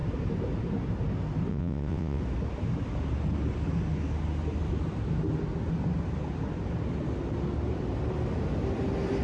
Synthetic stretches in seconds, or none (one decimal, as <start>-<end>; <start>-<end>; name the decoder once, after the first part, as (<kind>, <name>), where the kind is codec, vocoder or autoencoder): 1.5-2.2 (vocoder, WaveNeXt)